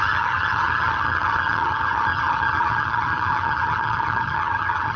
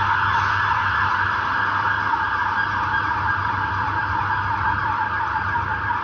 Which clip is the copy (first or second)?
first